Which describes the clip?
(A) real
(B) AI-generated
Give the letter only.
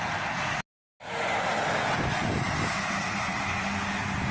A